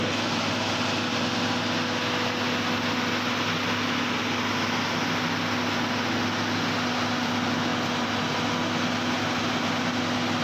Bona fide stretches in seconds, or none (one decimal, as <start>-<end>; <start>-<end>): 0.0-10.4